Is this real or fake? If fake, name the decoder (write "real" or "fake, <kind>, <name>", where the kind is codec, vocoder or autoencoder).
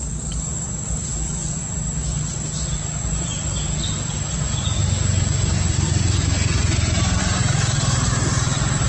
real